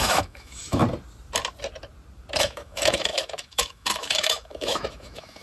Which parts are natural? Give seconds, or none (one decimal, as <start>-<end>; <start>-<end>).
0.8-2.4

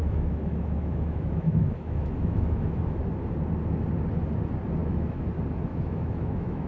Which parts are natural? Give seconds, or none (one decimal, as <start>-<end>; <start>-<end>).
3.0-4.8; 5.3-5.7

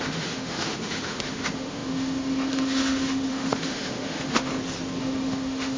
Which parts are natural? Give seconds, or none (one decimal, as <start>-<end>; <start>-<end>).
4.5-5.0

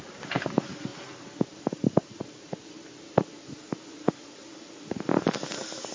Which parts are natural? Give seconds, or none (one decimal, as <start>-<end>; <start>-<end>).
0.0-5.9

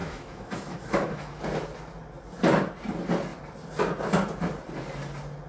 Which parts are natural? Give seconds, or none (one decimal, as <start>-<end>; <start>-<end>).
1.4-5.5